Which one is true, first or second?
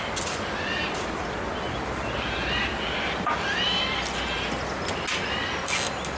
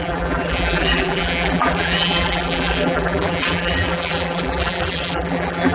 first